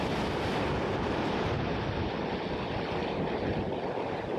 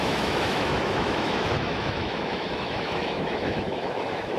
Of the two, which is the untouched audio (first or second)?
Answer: first